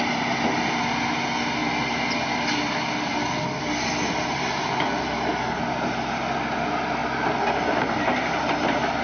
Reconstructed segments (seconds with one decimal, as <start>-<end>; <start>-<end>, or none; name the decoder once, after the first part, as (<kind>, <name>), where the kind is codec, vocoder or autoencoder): none